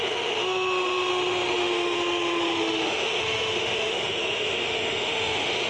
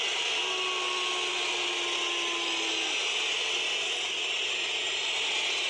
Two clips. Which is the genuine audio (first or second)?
second